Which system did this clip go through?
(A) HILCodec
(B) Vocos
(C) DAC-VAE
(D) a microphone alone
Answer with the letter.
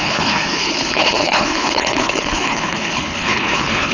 A